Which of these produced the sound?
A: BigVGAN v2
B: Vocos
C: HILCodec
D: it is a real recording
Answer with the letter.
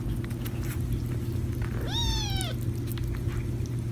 D